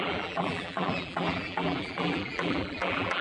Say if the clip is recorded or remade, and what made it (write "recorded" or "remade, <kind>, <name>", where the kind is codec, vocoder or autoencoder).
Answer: remade, vocoder, BigVGAN v2